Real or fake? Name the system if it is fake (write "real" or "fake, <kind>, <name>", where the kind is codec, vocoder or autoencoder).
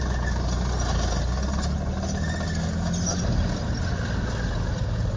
real